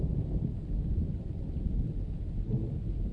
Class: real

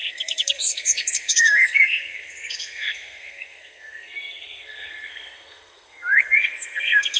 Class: fake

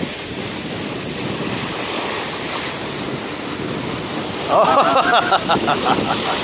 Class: real